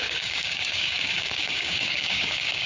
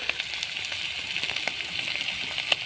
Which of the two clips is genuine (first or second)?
second